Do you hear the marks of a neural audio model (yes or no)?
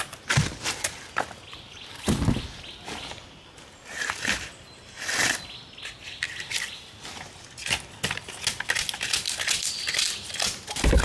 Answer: no